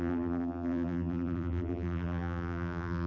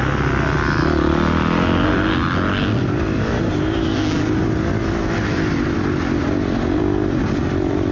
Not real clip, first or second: first